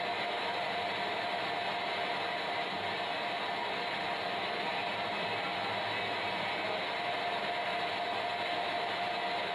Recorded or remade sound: recorded